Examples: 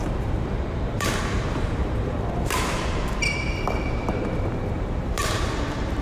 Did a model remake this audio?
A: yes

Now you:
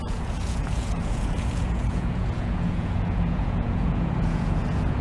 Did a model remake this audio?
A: yes